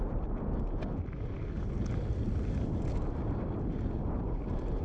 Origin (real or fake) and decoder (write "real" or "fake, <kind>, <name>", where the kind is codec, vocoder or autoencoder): real